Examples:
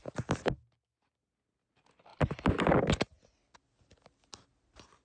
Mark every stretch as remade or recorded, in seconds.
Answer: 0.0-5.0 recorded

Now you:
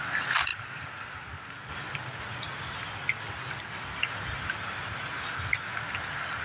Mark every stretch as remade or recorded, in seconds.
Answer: 0.0-6.4 recorded

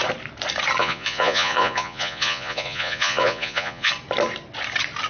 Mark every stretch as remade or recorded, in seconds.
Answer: 0.0-0.8 recorded; 0.8-3.9 remade; 3.9-5.1 recorded

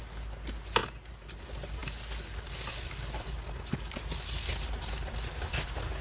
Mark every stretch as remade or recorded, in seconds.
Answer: 0.0-6.0 recorded

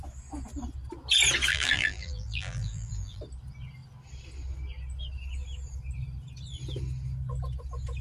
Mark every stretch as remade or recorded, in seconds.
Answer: 0.0-1.5 recorded; 1.5-3.2 remade; 3.2-8.0 recorded